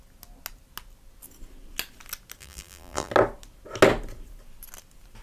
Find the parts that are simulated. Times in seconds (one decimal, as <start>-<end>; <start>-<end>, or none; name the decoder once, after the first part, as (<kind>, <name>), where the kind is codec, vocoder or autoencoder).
2.4-3.1 (vocoder, BigVGAN v2)